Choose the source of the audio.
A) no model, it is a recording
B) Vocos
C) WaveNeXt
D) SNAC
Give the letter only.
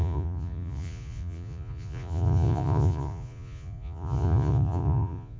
B